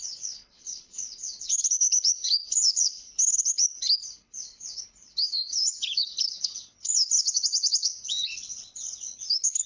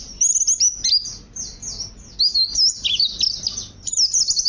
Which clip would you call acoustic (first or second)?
second